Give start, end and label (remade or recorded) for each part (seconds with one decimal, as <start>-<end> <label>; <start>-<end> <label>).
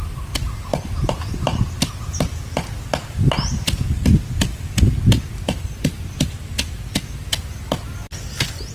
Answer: 0.0-8.7 recorded